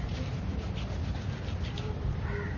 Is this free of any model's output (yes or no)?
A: yes